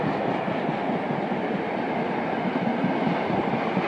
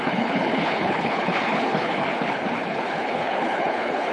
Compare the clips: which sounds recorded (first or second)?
first